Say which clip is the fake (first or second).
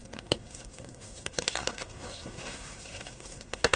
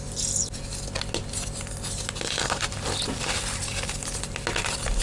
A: first